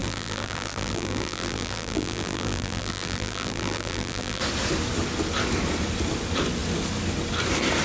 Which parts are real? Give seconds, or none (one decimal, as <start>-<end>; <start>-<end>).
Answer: 4.4-7.8